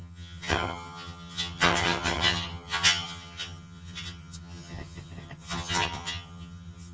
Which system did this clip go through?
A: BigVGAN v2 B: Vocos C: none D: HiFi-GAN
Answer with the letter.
D